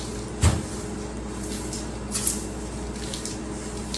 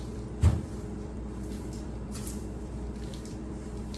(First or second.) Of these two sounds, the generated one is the second